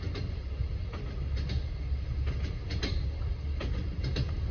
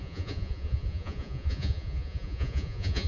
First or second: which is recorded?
first